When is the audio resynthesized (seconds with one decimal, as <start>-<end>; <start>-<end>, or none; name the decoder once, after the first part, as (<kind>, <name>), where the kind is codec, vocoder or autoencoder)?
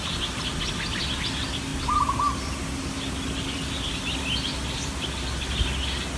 none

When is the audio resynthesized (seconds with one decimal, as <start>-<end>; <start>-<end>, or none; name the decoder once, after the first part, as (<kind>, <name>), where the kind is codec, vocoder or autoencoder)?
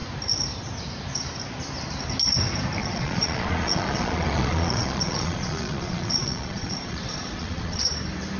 2.8-7.8 (vocoder, Vocos)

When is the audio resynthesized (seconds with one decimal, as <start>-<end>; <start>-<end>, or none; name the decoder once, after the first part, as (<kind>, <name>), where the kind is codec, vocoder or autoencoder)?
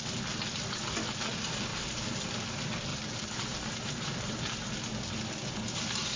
1.7-2.2 (vocoder, BigVGAN v2); 2.9-4.3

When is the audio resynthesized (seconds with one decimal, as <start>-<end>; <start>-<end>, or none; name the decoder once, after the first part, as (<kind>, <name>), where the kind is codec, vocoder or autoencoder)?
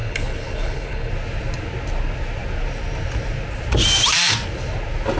0.0-1.1 (codec, HILCodec)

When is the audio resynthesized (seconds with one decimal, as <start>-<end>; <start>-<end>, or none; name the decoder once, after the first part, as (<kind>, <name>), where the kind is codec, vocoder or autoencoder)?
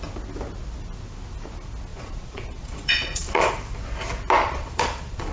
1.9-3.5 (vocoder, Vocos); 4.4-5.3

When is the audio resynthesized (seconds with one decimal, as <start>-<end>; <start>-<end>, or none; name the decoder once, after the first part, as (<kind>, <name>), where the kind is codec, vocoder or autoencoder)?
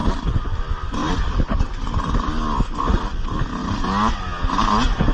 1.0-2.0 (vocoder, BigVGAN v2)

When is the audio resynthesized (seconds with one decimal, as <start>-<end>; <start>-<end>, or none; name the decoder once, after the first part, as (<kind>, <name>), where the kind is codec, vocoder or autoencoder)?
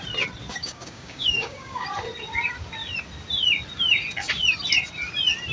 0.5-1.9 (codec, DAC)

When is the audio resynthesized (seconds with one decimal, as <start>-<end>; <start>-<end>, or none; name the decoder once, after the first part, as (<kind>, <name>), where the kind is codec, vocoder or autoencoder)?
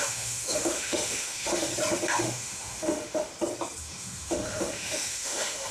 0.0-1.7 (autoencoder, DAC-VAE); 2.2-3.3; 3.8-5.7